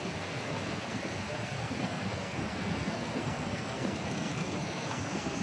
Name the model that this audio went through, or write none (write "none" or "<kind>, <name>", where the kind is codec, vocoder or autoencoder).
codec, SNAC